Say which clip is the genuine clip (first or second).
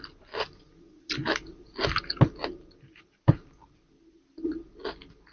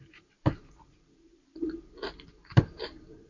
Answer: first